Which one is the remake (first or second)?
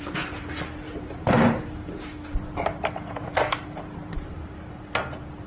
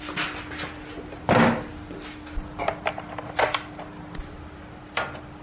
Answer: first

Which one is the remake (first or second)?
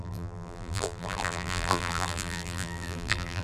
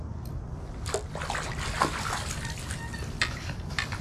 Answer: first